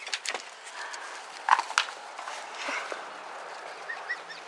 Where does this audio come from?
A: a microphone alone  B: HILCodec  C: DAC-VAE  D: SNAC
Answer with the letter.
A